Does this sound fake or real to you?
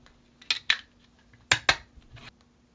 real